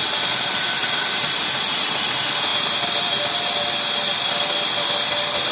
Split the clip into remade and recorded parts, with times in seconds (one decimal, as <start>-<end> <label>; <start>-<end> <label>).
0.0-5.5 recorded

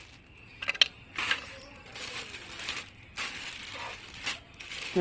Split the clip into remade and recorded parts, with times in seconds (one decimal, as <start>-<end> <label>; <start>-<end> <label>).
0.0-5.0 recorded

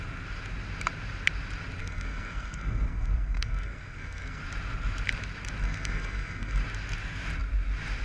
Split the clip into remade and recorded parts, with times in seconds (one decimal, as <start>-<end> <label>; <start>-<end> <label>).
0.0-1.8 recorded; 1.8-4.4 remade; 4.4-5.6 recorded; 5.6-6.6 remade; 6.6-8.0 recorded

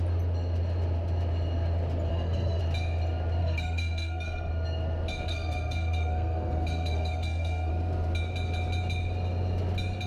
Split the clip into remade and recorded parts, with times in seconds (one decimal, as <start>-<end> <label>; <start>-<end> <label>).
0.0-2.1 recorded; 2.1-2.6 remade; 2.6-3.4 recorded; 3.4-4.5 remade; 4.5-5.3 recorded; 5.3-7.7 remade; 7.7-10.1 recorded

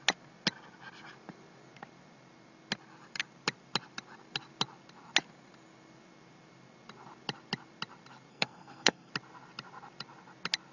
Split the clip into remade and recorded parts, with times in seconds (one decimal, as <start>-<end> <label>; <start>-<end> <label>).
0.0-8.3 recorded; 8.3-9.1 remade; 9.1-10.7 recorded

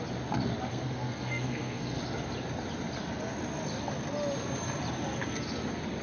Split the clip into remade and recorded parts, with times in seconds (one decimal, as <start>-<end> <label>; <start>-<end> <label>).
0.0-0.7 recorded; 0.7-2.0 remade; 2.0-6.0 recorded

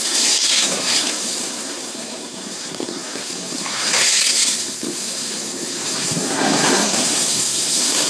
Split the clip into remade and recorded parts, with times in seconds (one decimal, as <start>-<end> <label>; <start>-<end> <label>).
0.0-8.1 remade